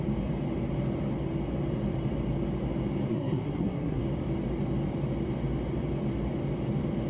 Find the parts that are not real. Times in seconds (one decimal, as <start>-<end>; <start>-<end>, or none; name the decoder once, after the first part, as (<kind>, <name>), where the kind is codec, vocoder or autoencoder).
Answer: 3.1-4.0 (codec, SNAC)